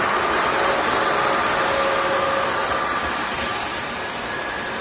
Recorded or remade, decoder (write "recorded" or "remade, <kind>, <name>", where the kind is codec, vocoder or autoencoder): recorded